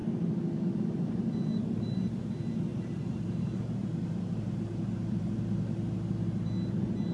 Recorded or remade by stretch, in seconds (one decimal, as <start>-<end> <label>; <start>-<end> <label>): 0.0-2.7 recorded; 2.7-5.4 remade; 5.4-7.1 recorded